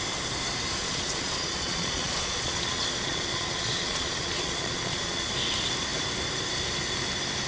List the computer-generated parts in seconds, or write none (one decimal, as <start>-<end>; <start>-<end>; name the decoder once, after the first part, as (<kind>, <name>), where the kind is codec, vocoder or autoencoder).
0.8-5.3 (vocoder, Vocos)